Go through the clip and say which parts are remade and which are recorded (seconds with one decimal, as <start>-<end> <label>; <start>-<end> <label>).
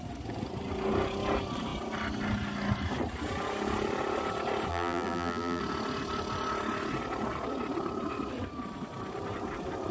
0.0-4.7 recorded; 4.7-5.6 remade; 5.6-9.9 recorded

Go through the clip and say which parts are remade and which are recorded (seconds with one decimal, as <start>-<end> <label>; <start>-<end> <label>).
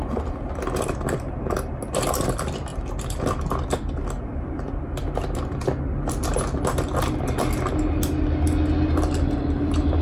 0.0-10.0 recorded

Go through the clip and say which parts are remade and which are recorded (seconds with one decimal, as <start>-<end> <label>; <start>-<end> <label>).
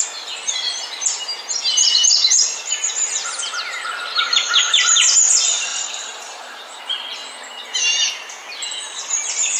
0.0-5.7 recorded; 5.7-6.8 remade; 6.8-9.6 recorded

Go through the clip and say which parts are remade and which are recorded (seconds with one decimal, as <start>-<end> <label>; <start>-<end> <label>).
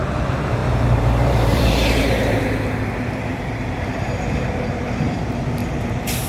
0.0-5.6 remade; 5.6-6.3 recorded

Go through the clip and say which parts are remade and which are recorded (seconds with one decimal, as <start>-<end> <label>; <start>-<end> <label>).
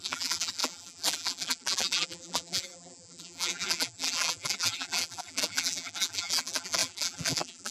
0.0-7.7 remade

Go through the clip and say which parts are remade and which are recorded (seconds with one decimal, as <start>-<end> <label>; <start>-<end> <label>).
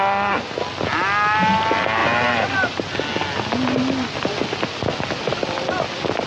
0.0-2.0 recorded; 2.0-3.0 remade; 3.0-6.3 recorded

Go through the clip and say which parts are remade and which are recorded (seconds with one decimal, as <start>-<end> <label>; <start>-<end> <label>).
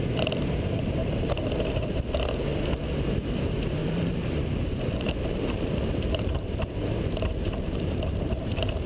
0.0-1.0 recorded; 1.0-1.7 remade; 1.7-3.8 recorded; 3.8-8.9 remade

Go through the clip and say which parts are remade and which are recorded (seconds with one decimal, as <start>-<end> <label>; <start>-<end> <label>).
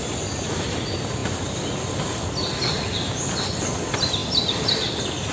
0.0-5.3 recorded